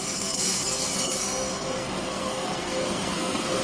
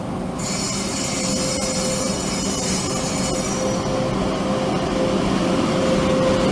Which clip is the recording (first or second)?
second